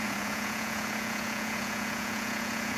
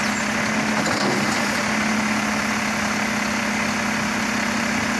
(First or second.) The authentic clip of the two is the second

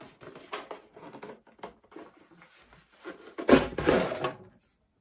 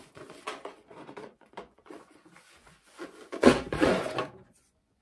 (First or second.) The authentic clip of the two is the first